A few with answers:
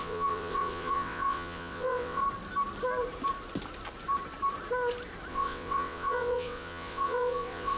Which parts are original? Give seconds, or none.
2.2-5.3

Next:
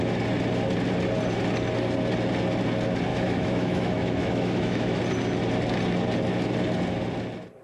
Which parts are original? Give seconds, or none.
0.0-3.1; 5.0-7.6

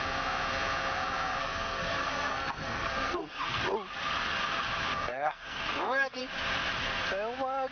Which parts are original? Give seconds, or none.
0.0-1.4; 3.6-5.1; 6.2-7.7

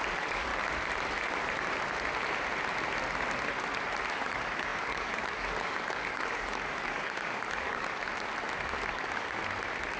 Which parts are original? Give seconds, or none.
0.5-4.1; 8.0-8.9; 9.4-10.0